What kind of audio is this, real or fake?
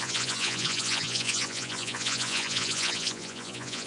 fake